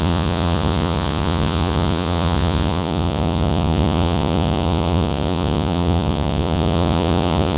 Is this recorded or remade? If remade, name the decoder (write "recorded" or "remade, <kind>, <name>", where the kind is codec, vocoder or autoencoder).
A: remade, vocoder, Vocos